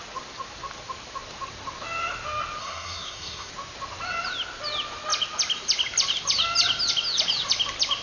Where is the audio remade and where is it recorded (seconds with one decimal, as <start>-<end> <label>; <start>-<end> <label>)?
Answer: 0.0-2.6 recorded; 2.6-3.5 remade; 3.5-8.0 recorded